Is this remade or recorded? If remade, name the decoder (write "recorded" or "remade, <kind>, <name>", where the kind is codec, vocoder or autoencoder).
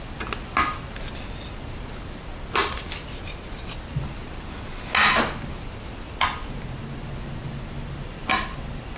recorded